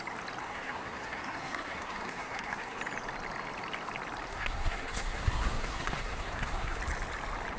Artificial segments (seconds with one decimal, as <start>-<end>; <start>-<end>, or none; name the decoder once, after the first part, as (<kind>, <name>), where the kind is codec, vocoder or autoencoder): 0.4-2.8 (codec, SNAC); 4.3-6.8